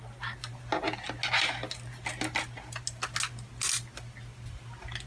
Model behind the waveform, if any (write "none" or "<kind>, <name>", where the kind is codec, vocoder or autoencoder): none